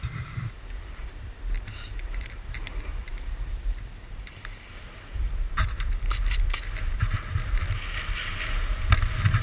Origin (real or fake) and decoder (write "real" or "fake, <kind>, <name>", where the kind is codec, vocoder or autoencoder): fake, vocoder, BigVGAN v2